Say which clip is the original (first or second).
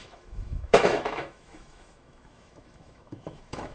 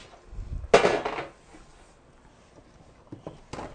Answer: second